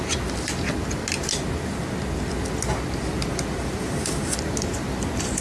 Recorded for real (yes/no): yes